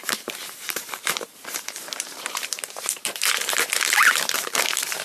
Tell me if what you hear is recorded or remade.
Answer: remade